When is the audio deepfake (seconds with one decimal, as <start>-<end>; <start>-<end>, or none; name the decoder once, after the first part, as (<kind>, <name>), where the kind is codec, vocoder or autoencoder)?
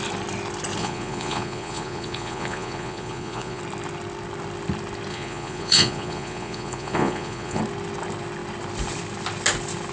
0.8-3.6 (vocoder, Vocos); 5.1-7.6